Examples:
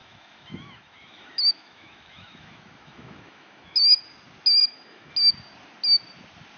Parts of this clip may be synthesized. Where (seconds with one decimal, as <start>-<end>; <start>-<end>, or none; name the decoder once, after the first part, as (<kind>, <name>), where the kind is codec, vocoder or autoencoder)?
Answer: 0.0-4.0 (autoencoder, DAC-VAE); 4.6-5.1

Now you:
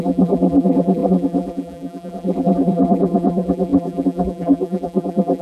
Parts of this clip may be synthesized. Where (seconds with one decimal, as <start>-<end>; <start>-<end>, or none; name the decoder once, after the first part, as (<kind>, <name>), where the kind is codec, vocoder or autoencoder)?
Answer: 0.0-5.4 (vocoder, BigVGAN v2)

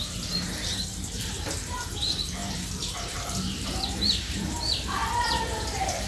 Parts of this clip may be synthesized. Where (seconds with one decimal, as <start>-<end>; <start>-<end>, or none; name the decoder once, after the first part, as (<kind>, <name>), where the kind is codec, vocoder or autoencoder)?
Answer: 0.0-0.7 (vocoder, BigVGAN v2); 1.2-6.1

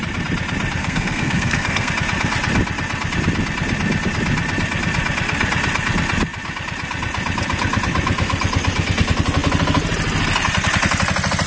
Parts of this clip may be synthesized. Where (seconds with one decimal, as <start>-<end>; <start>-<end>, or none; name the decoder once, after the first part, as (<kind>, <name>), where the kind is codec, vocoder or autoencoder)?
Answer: 0.8-1.9 (codec, SNAC)

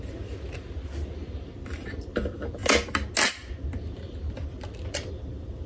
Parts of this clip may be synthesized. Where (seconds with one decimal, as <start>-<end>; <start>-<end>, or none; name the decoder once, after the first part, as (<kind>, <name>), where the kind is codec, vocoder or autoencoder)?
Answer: 0.0-2.6 (vocoder, BigVGAN v2); 3.3-5.7

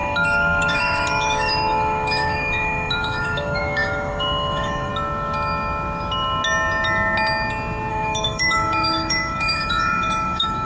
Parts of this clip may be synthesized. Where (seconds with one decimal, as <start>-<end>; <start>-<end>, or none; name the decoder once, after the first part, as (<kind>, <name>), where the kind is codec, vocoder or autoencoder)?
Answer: 0.0-4.9 (autoencoder, DAC-VAE); 7.9-10.7